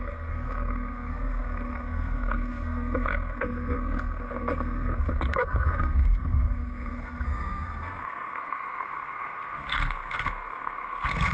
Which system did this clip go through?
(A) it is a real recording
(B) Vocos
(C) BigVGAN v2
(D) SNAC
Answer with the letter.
D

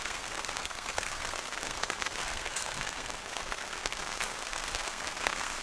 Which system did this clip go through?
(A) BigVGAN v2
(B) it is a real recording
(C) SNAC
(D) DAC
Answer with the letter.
C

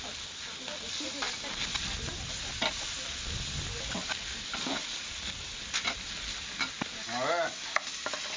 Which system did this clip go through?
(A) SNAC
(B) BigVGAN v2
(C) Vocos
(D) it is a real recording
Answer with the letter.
D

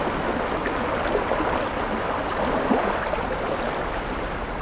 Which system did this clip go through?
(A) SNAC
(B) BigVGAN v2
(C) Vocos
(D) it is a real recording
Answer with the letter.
D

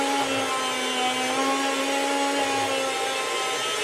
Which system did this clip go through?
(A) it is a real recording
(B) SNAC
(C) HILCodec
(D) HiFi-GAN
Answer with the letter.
A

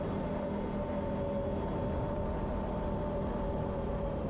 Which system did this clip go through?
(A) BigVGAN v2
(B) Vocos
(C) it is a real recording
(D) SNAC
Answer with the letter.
C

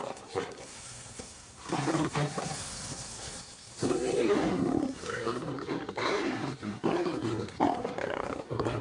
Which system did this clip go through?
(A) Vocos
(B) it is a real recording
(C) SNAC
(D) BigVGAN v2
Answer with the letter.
C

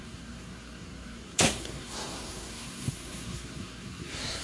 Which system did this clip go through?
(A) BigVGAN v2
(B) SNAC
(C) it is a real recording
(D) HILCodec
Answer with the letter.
B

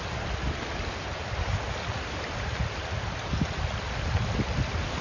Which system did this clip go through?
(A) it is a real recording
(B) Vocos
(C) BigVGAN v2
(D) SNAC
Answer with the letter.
A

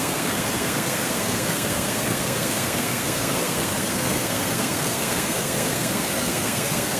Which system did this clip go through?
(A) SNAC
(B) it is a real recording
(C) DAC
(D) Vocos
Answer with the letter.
A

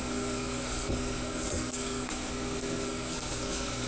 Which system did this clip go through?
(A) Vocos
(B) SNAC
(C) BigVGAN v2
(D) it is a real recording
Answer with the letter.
B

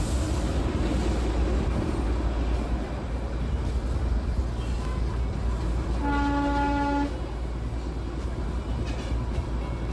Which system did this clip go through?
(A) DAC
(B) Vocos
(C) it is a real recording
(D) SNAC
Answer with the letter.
C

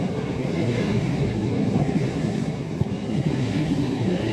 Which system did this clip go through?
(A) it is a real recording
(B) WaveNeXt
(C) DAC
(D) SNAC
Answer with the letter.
D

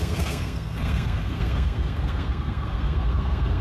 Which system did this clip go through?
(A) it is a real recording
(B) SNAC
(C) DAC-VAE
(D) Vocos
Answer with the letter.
B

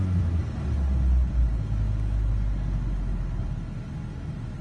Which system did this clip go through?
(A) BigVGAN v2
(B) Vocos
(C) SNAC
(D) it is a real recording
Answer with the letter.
D